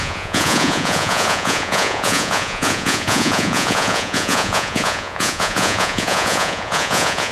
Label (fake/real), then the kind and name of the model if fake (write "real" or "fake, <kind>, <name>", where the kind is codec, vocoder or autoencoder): fake, vocoder, Vocos